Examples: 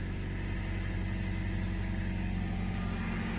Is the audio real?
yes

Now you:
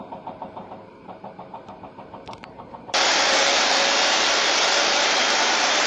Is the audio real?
no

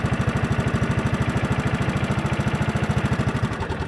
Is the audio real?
yes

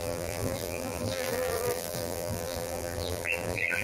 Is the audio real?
no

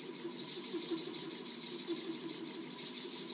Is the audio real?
no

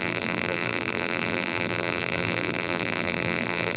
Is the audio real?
no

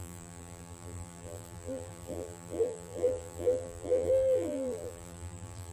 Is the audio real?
no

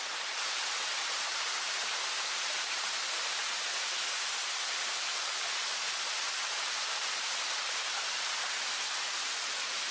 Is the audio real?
no